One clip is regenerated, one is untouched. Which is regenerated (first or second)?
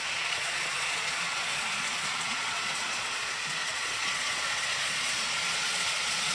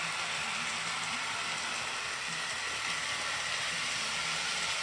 first